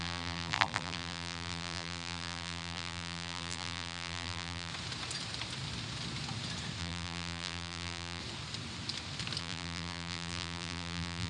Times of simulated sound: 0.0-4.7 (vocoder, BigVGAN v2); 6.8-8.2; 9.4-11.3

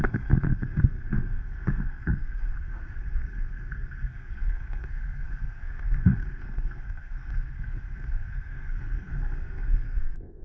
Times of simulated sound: 0.0-10.4 (codec, SNAC)

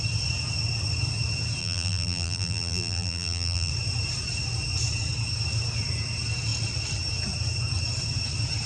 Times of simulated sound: 1.6-3.7 (vocoder, BigVGAN v2)